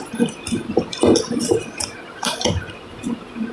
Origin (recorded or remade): remade